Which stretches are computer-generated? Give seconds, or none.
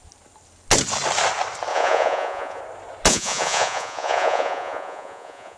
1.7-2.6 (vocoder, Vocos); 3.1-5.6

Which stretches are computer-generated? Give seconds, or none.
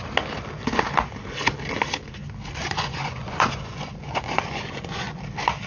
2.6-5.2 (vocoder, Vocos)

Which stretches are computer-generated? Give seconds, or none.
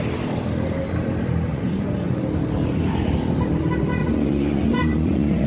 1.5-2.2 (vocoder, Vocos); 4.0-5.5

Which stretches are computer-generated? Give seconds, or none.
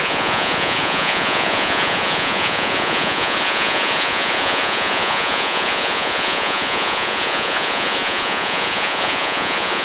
0.0-9.8 (vocoder, Vocos)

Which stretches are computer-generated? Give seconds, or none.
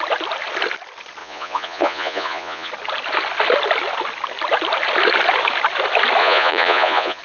1.2-2.7 (vocoder, Vocos); 6.2-7.2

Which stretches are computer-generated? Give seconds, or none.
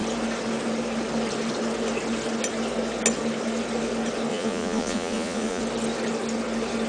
4.3-5.6 (vocoder, Vocos)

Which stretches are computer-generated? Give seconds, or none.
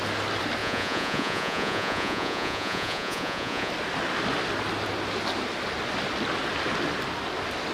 0.6-3.7 (vocoder, Vocos)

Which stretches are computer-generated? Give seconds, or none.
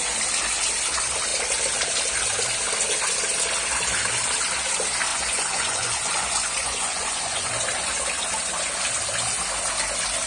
5.1-7.5 (vocoder, Vocos)